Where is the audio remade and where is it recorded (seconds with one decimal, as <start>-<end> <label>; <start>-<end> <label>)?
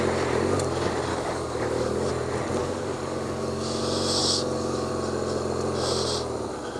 0.0-1.1 recorded; 1.1-2.1 remade; 2.1-2.6 recorded; 2.6-3.8 remade; 3.8-4.2 recorded; 4.2-4.9 remade; 4.9-6.8 recorded